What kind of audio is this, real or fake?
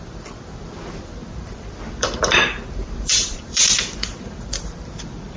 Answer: fake